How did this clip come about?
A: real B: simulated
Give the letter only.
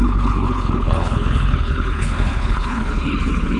B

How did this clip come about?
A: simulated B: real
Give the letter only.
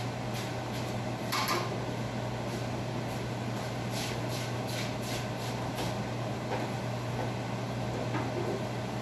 B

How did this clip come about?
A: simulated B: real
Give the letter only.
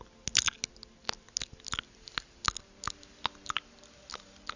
B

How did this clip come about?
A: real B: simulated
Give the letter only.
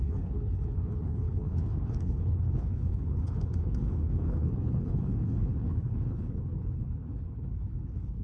B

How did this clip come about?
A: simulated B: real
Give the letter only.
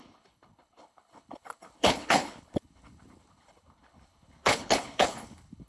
A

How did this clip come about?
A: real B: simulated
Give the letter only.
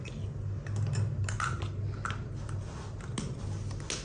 A